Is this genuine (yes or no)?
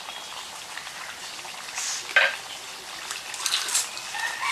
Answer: yes